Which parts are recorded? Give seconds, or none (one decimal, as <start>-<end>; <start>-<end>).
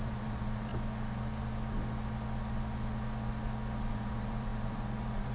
0.7-3.9